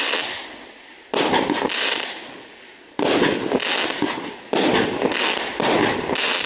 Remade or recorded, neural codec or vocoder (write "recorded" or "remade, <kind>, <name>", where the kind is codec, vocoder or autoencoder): recorded